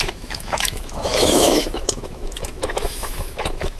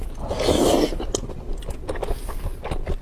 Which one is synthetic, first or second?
first